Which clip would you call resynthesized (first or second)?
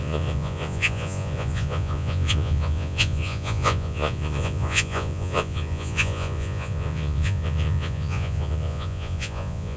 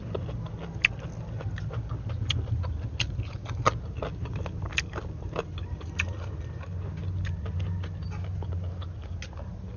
first